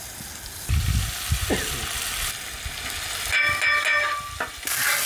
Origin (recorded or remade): recorded